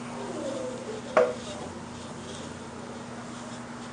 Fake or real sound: real